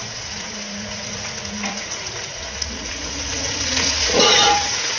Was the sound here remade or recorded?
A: remade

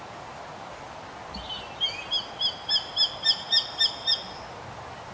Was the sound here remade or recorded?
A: recorded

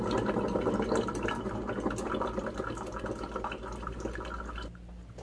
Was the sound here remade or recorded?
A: recorded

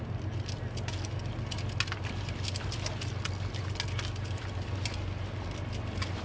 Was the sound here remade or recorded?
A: recorded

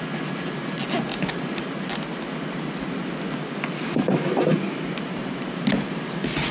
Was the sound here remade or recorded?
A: recorded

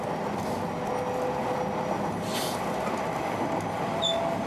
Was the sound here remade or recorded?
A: recorded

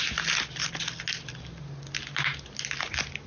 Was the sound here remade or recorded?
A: recorded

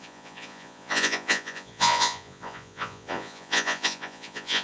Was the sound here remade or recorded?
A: remade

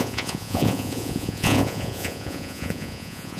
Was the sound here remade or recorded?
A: remade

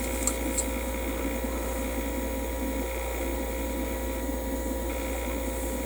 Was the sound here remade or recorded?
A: recorded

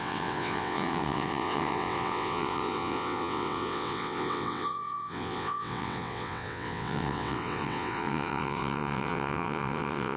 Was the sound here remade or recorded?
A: remade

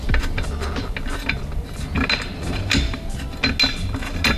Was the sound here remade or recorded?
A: recorded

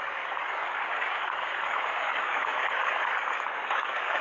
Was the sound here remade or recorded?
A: remade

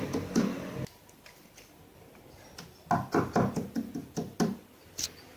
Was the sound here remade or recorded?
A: recorded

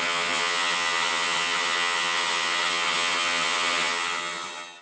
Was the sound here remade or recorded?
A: remade